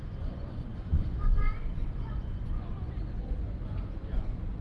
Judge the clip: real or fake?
fake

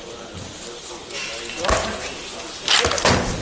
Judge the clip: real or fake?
real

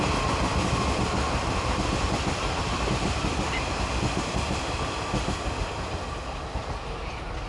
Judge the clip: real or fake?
real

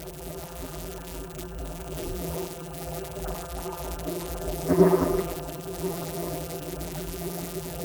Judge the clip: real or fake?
fake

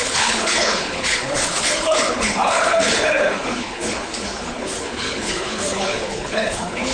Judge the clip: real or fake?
fake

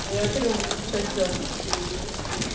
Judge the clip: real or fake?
real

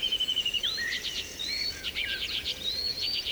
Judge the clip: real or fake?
fake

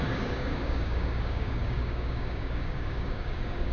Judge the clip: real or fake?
fake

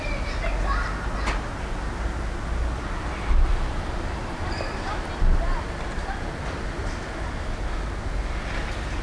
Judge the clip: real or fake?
real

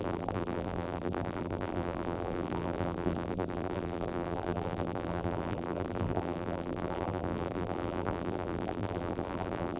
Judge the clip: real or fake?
fake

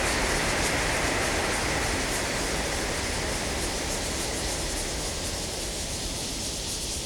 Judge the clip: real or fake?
real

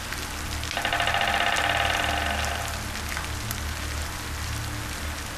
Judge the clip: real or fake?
real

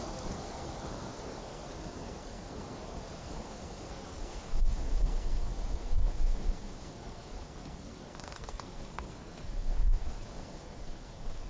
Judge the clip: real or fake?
fake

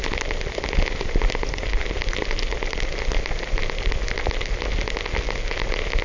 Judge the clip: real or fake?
real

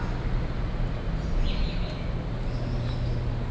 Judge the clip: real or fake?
real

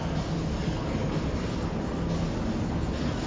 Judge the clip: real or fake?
real